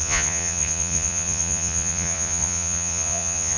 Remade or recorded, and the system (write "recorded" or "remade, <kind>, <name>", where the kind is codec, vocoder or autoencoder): remade, vocoder, Vocos